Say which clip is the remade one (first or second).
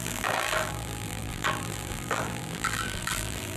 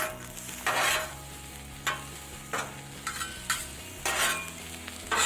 first